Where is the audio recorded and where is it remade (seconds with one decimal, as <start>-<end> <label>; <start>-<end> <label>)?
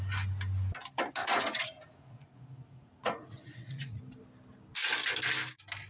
0.0-1.2 recorded; 1.2-4.0 remade; 4.0-5.9 recorded